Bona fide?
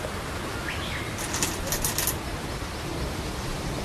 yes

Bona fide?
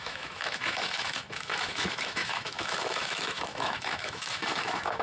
no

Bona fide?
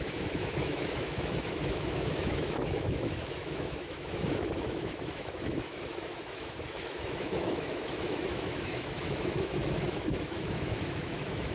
no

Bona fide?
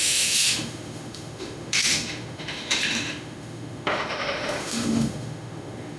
no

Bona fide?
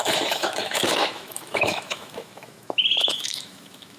no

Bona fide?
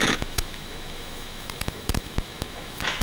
no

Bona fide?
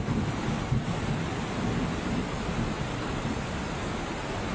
yes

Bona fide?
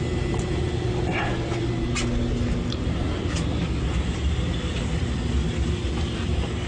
yes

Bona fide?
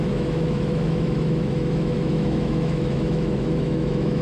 no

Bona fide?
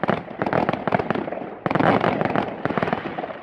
yes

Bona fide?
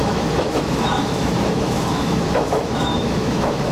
no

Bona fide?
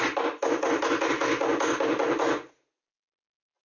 yes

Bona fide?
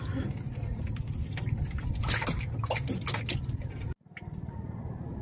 yes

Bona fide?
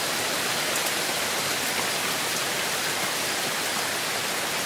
yes